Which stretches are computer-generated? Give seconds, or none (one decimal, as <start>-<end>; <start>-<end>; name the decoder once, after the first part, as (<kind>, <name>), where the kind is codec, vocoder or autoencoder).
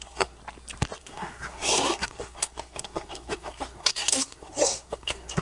0.0-0.4 (codec, SNAC); 1.0-5.4